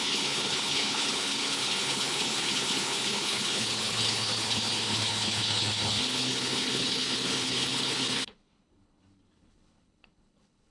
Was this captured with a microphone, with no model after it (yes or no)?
no